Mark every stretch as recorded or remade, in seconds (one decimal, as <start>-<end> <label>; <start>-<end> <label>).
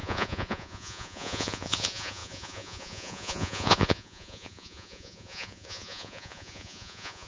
0.0-7.3 remade